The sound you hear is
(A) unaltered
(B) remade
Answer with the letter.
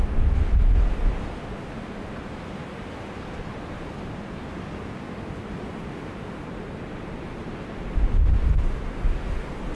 A